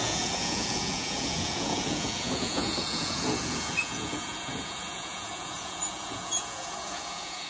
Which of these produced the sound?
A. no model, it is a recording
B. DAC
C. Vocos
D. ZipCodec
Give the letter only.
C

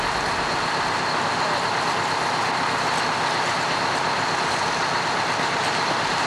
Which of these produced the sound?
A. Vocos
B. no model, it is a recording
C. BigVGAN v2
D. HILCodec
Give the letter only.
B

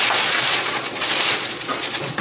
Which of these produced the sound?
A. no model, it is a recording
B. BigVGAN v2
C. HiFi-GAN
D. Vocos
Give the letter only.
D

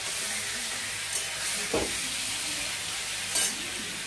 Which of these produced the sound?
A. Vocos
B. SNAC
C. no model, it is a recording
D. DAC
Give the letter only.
C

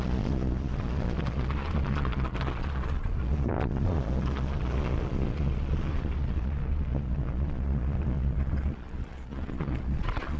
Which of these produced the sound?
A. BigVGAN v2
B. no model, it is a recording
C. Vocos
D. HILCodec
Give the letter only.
C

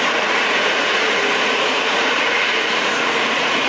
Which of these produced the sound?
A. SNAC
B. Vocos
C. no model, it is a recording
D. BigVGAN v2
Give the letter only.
B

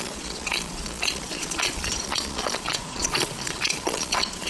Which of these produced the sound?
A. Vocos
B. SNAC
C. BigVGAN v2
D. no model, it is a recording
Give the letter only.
A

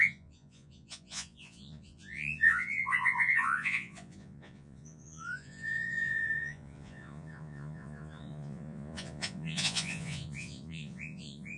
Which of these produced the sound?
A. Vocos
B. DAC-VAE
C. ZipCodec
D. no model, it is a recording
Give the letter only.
A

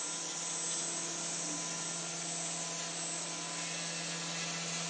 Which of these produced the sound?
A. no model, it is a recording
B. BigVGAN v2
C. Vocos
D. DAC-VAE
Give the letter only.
A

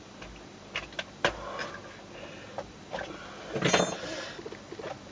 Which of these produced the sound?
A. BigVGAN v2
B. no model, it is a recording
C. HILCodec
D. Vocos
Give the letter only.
B